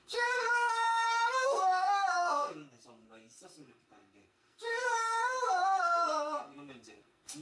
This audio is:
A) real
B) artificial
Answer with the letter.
B